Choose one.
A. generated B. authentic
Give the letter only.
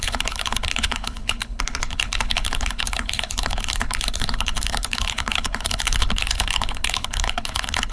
A